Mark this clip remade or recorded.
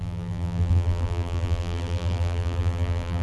remade